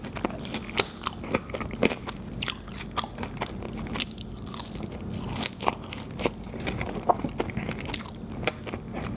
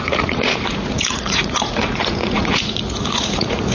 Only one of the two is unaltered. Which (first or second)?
first